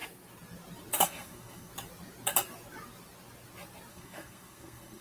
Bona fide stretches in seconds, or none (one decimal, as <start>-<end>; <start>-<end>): 0.0-0.9; 1.7-3.9